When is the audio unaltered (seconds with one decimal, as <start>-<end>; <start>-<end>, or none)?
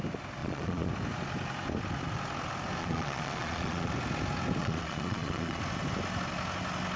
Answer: 0.0-0.4; 0.9-2.8; 3.9-4.6; 5.6-7.0